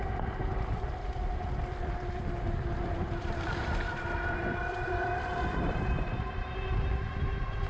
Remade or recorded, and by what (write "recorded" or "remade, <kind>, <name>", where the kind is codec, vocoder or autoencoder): remade, vocoder, BigVGAN v2